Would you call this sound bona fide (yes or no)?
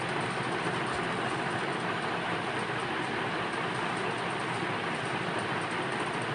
yes